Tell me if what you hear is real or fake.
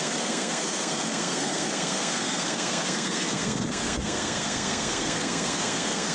fake